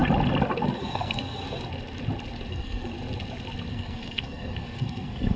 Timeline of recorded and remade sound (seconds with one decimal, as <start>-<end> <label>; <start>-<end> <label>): 0.0-0.8 recorded; 0.8-1.4 remade; 1.4-2.5 recorded; 2.5-2.9 remade; 2.9-3.7 recorded; 3.7-5.4 remade

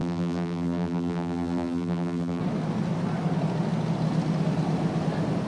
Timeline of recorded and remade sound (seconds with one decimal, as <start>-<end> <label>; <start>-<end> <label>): 0.0-2.4 remade; 2.4-5.5 recorded

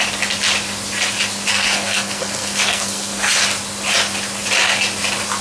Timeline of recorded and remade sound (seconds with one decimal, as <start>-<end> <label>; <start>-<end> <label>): 0.0-1.5 recorded; 1.5-3.3 remade; 3.3-5.4 recorded

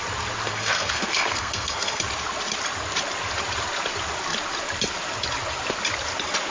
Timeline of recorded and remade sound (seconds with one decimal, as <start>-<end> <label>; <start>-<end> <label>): 0.0-0.5 recorded; 0.5-2.0 remade; 2.0-6.5 recorded